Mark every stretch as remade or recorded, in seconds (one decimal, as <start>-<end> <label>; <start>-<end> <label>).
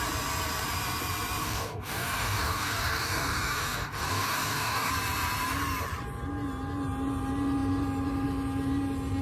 0.0-1.4 recorded; 1.4-4.9 remade; 4.9-9.2 recorded